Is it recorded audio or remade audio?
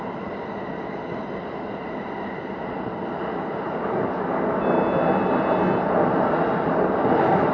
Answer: recorded